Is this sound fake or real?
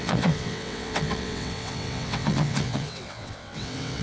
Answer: fake